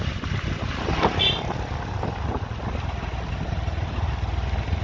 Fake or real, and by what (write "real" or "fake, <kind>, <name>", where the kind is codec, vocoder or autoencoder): real